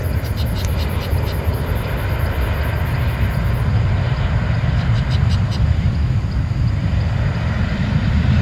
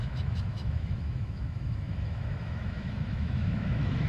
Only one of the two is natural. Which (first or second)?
first